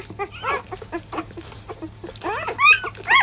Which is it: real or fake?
real